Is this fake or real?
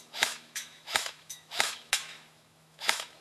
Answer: fake